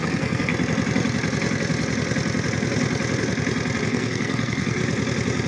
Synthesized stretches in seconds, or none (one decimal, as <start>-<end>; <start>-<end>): 0.0-0.5; 3.8-4.8